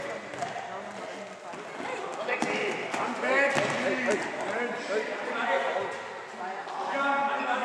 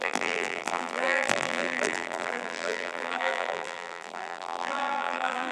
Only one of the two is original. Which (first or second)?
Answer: first